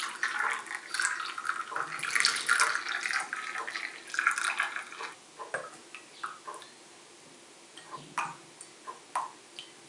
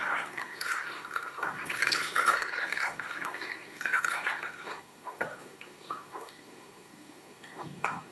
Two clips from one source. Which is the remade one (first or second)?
second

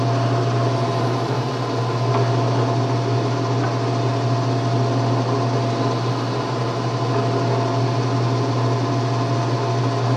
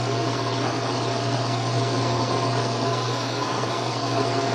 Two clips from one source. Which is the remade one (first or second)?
second